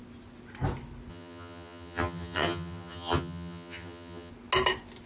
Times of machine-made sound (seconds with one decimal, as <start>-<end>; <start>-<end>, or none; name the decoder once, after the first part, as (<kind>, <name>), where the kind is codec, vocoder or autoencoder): 1.1-4.3 (vocoder, HiFi-GAN)